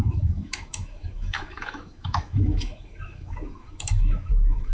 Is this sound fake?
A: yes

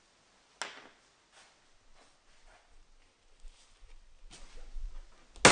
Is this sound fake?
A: no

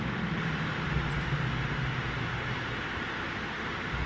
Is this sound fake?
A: no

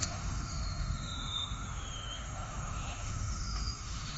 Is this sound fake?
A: yes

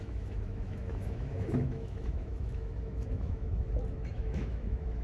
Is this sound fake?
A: yes